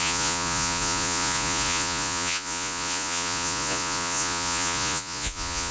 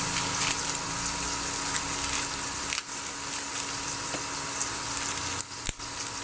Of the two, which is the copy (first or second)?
first